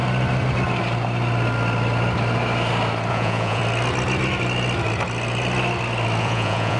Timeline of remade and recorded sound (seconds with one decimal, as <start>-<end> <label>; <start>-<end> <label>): 0.0-3.1 recorded; 3.1-3.6 remade; 3.6-6.2 recorded; 6.2-6.8 remade